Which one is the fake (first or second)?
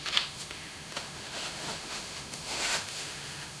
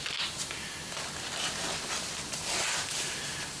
first